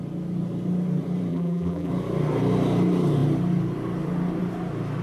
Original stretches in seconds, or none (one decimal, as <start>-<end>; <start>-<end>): 0.0-1.3; 1.9-5.0